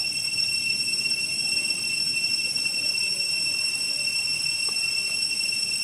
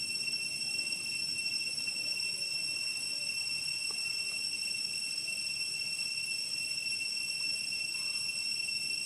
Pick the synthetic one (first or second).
first